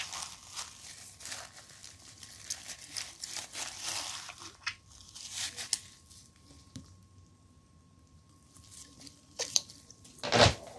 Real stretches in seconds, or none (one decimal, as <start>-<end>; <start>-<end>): 0.0-1.8; 5.2-6.2; 10.1-10.8